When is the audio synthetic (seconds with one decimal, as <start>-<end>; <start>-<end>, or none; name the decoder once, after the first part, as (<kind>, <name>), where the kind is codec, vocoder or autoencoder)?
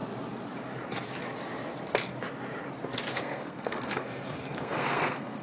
3.1-5.4 (codec, SNAC)